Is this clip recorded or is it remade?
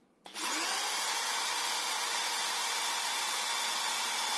recorded